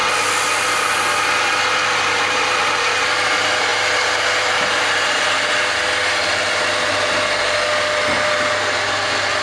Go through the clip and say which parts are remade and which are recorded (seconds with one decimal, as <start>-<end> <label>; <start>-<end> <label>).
0.0-9.4 recorded